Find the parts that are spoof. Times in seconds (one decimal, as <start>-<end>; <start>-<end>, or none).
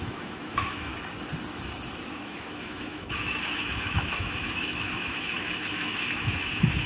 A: 0.0-0.9; 2.1-6.9